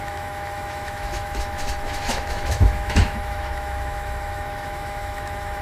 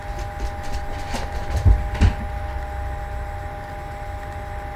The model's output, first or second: first